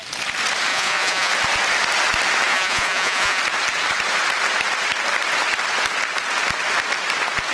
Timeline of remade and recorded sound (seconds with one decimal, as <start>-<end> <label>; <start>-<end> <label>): 0.0-0.7 recorded; 0.7-1.3 remade; 1.3-2.5 recorded; 2.5-3.4 remade; 3.4-7.5 recorded